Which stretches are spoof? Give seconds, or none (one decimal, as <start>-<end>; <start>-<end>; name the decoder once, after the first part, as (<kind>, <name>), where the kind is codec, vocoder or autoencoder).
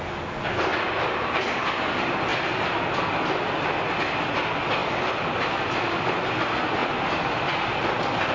0.7-1.4 (vocoder, BigVGAN v2); 4.8-6.2; 6.8-7.5